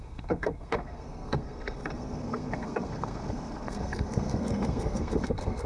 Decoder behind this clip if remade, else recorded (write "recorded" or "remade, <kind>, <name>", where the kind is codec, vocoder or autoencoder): remade, codec, SNAC